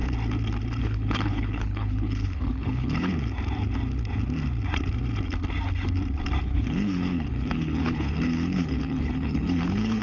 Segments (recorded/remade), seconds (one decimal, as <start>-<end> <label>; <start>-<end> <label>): 0.0-0.8 recorded; 0.8-3.1 remade; 3.1-6.4 recorded; 6.4-10.0 remade